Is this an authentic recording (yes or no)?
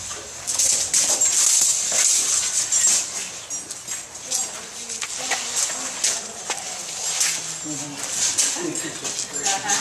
yes